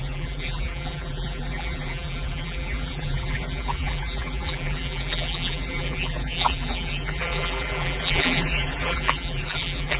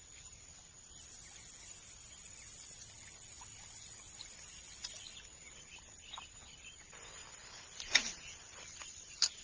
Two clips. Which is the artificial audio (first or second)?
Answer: first